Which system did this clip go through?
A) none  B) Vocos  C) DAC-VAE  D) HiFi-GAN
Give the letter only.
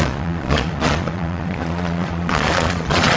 B